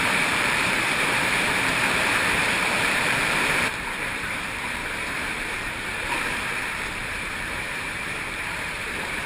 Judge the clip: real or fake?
fake